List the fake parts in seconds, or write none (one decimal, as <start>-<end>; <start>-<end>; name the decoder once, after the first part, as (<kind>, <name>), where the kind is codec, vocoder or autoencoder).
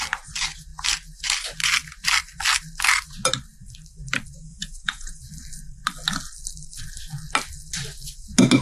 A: 4.5-5.2 (vocoder, Vocos)